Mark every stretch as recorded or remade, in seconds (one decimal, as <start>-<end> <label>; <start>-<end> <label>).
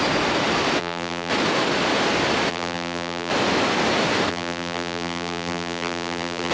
0.0-0.8 recorded; 0.8-1.3 remade; 1.3-2.5 recorded; 2.5-3.3 remade; 3.3-4.3 recorded; 4.3-6.5 remade